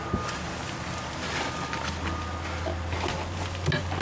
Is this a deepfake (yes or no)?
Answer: no